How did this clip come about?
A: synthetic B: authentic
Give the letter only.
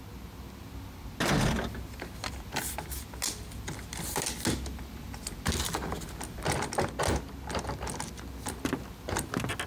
B